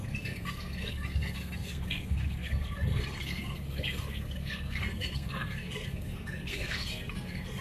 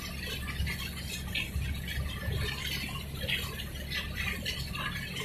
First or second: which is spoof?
first